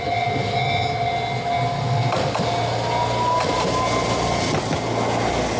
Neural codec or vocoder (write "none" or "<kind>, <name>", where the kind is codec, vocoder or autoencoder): none